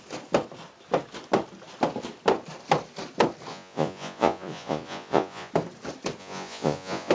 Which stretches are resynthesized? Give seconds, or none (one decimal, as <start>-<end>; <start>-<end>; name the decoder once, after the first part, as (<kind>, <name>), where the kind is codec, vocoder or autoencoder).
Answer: 3.5-5.5 (vocoder, Vocos); 6.2-7.1